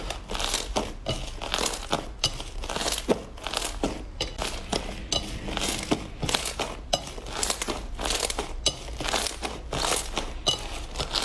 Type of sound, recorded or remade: recorded